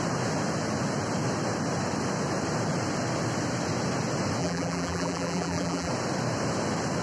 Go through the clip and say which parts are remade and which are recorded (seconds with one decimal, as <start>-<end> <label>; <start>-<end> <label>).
0.0-4.4 recorded; 4.4-5.9 remade; 5.9-7.0 recorded